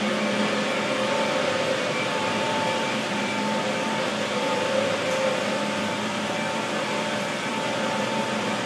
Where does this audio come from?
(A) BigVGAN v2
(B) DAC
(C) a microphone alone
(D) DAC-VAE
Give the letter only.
A